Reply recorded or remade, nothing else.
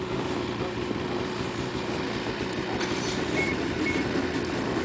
recorded